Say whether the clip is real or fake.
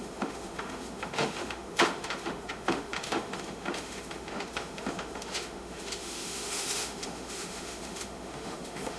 fake